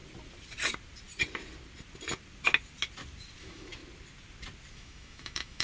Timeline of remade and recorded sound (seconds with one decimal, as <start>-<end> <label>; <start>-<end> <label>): 0.0-3.4 recorded; 3.4-3.8 remade; 3.8-4.7 recorded; 4.7-5.6 remade